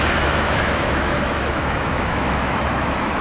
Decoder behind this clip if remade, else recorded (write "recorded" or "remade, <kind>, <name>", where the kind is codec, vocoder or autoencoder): remade, autoencoder, DAC-VAE